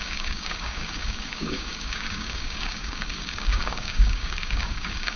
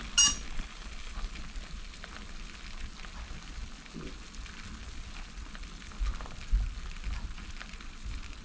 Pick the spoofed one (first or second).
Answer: first